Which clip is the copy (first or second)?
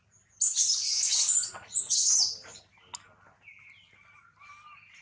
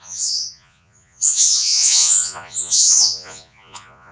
second